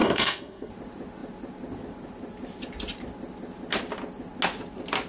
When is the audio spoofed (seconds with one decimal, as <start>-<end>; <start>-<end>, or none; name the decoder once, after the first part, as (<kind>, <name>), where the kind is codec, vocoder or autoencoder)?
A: 0.0-0.7 (codec, SNAC)